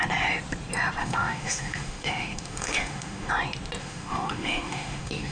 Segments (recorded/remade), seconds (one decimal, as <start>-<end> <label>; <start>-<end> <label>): 0.0-1.0 recorded; 1.0-3.3 remade; 3.3-3.8 recorded; 3.8-5.3 remade